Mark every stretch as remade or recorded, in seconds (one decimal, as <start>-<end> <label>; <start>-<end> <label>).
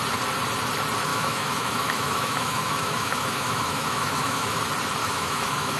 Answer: 0.0-1.1 recorded; 1.1-4.6 remade; 4.6-5.0 recorded; 5.0-5.8 remade